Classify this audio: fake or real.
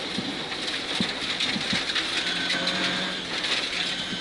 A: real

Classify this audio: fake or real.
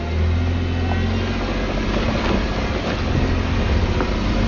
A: real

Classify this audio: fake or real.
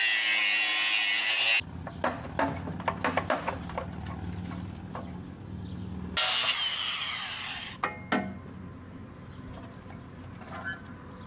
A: real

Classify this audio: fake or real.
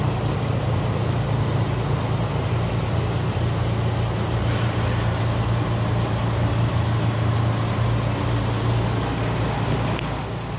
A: real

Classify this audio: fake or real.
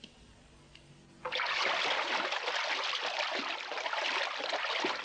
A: real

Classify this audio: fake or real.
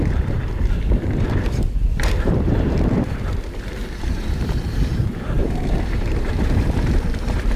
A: fake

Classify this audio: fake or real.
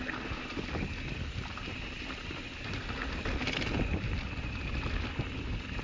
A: real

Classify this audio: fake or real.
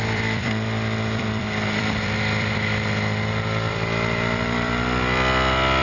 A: fake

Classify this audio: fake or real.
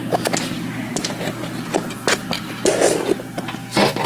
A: real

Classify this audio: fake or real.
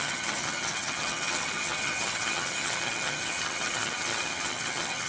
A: fake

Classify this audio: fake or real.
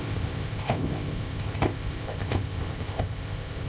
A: fake